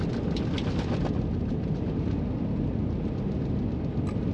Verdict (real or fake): real